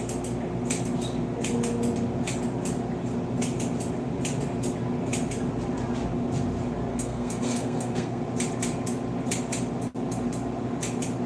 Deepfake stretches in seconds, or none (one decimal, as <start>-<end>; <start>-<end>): 6.9-8.2